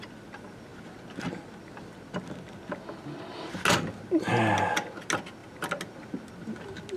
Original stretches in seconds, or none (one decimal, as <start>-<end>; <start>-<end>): 0.0-7.0